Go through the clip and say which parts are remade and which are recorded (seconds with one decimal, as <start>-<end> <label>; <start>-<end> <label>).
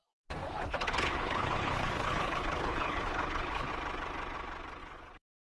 0.0-0.4 recorded; 0.4-3.7 remade; 3.7-4.8 recorded; 4.8-5.5 remade